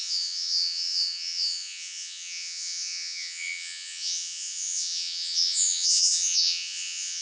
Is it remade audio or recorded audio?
remade